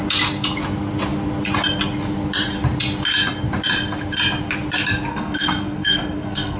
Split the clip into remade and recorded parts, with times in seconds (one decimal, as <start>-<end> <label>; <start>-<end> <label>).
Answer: 0.0-5.1 recorded; 5.1-6.6 remade

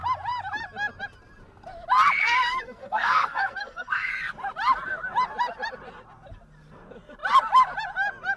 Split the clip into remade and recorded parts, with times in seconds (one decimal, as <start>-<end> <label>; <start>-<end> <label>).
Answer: 0.0-2.2 recorded; 2.2-4.1 remade; 4.1-8.4 recorded

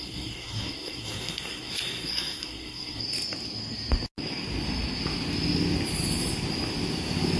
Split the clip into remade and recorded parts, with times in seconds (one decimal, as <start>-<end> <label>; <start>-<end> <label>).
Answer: 0.0-3.0 remade; 3.0-7.4 recorded

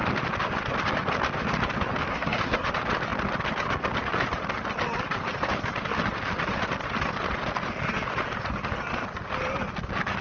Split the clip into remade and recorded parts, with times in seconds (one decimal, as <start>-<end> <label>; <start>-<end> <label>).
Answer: 0.0-2.1 recorded; 2.1-2.7 remade; 2.7-10.2 recorded

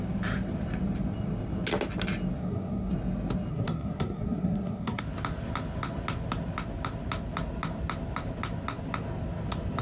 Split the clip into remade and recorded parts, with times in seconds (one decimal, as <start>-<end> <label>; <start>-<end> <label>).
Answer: 0.0-2.4 recorded; 2.4-2.9 remade; 2.9-3.5 recorded; 3.5-5.0 remade; 5.0-9.8 recorded

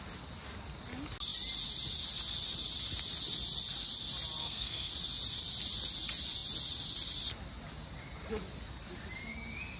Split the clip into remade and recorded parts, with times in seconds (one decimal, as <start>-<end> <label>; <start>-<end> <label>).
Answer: 0.0-4.4 recorded; 4.4-4.9 remade; 4.9-9.8 recorded

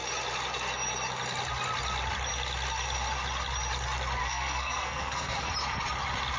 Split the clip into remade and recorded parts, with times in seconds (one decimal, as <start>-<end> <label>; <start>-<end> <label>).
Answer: 0.0-4.2 recorded; 4.2-5.5 remade; 5.5-6.4 recorded

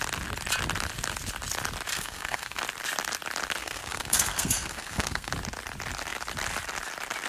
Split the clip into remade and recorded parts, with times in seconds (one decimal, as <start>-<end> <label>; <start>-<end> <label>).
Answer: 0.0-1.9 recorded; 1.9-2.6 remade; 2.6-3.6 recorded; 3.6-5.3 remade; 5.3-7.3 recorded